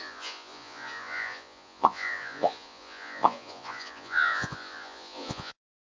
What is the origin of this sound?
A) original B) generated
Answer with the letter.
B